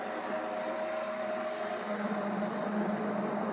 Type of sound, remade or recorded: recorded